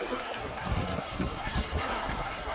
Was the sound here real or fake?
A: fake